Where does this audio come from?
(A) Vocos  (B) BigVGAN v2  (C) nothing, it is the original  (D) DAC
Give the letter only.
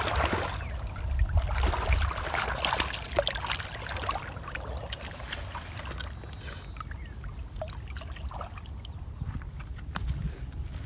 C